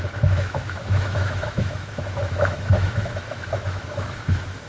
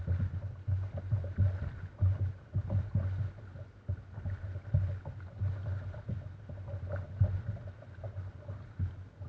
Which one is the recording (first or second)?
second